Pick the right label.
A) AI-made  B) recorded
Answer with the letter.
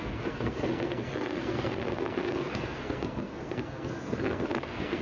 A